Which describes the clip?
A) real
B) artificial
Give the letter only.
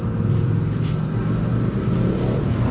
A